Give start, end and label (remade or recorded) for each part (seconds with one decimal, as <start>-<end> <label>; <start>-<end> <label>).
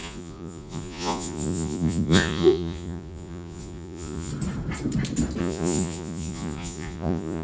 0.0-4.3 remade; 4.3-5.4 recorded; 5.4-7.4 remade